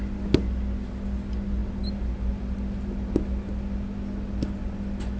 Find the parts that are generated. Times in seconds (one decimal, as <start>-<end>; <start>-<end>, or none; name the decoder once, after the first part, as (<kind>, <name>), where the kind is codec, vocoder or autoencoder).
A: none